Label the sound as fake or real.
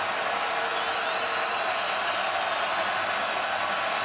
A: real